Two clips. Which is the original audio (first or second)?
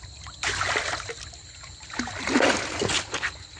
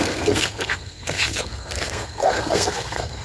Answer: first